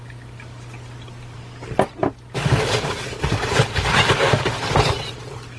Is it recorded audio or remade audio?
recorded